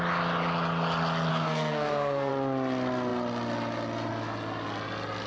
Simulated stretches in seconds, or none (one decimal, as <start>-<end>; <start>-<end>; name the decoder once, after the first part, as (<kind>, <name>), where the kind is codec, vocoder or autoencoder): 1.3-2.3 (codec, SNAC)